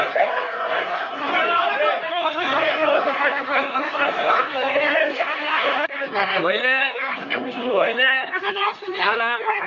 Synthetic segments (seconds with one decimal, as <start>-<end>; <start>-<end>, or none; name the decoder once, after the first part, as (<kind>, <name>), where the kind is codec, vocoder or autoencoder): 0.0-1.3 (codec, SNAC); 2.1-9.7